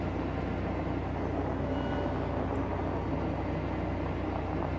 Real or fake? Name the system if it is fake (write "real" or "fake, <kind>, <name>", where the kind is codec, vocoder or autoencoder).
real